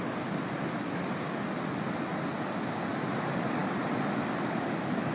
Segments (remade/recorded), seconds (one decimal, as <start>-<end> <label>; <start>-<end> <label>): 0.0-5.1 recorded

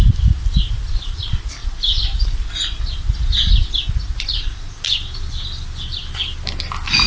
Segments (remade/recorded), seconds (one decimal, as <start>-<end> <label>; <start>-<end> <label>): 0.0-7.1 recorded